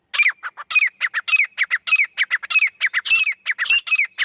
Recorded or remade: recorded